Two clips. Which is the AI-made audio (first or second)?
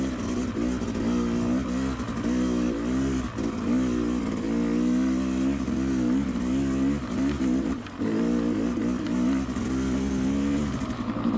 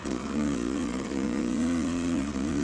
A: second